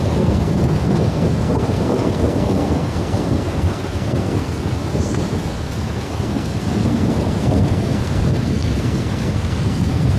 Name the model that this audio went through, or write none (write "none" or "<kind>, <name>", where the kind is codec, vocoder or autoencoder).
codec, SNAC